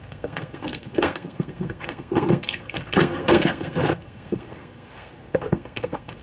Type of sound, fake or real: fake